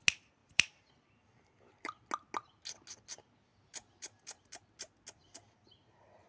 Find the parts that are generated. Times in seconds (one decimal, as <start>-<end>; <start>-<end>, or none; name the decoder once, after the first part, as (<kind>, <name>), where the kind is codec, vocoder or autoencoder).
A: 0.4-0.9 (vocoder, BigVGAN v2); 3.5-4.5